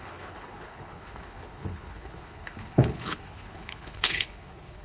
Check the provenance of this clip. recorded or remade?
remade